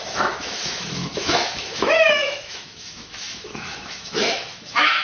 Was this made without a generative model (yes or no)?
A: no